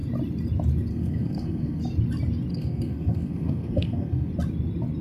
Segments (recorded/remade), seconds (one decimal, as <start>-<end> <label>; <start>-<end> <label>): 0.0-0.9 recorded; 0.9-1.8 remade; 1.8-2.5 recorded; 2.5-4.3 remade; 4.3-5.0 recorded